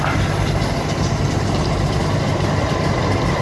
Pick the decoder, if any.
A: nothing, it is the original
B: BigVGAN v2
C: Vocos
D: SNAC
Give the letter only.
A